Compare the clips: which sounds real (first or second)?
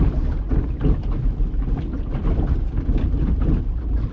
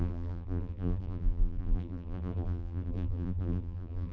first